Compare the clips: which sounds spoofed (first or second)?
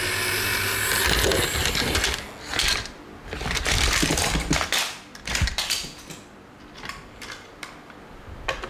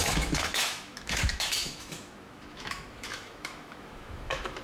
second